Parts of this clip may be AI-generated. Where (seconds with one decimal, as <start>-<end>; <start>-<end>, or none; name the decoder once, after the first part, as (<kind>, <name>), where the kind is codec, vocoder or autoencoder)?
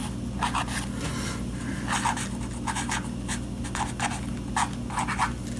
none